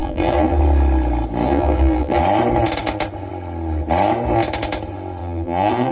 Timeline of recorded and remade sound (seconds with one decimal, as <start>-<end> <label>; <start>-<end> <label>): 0.0-0.6 remade; 0.6-1.4 recorded; 1.4-2.2 remade; 2.2-5.2 recorded; 5.2-5.9 remade